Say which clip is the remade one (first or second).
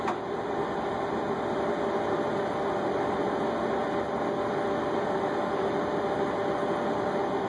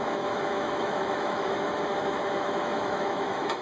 second